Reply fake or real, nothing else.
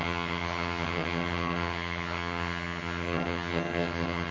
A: fake